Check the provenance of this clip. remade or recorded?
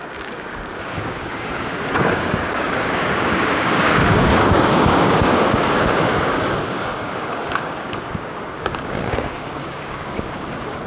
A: remade